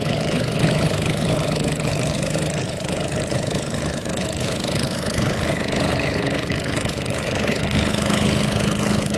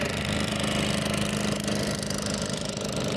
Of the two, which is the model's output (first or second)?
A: first